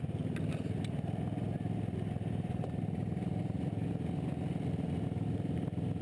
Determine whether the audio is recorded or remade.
recorded